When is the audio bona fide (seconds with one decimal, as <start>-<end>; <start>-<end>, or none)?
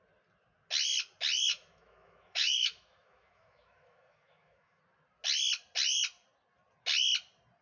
0.0-1.5; 4.8-7.6